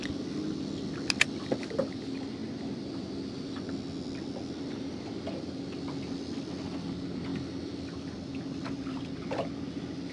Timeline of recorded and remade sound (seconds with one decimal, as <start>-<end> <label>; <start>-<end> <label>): 0.0-10.1 recorded